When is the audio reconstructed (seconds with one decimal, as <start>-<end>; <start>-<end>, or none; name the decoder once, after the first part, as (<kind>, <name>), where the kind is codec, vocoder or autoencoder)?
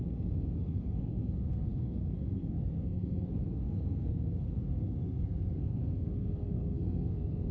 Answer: 0.0-7.5 (codec, SNAC)